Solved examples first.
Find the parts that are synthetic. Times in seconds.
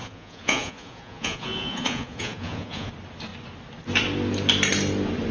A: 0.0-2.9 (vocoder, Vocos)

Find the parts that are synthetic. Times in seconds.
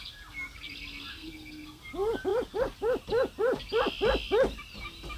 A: 1.1-1.8 (codec, SNAC)